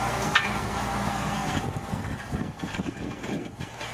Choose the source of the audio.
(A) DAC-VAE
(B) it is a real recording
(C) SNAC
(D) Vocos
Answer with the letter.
C